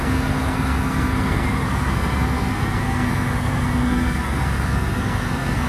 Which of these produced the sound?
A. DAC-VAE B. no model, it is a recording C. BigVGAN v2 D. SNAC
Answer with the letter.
D